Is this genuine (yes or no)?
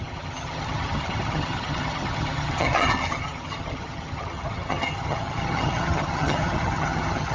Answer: no